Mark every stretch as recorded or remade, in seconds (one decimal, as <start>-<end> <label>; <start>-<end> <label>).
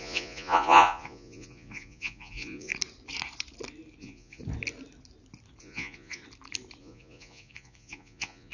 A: 0.0-2.7 remade; 2.7-4.0 recorded; 4.0-4.4 remade; 4.4-5.6 recorded; 5.6-6.2 remade; 6.2-6.8 recorded; 6.8-8.5 remade